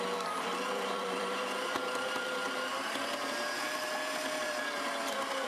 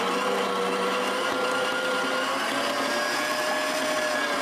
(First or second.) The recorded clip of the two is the second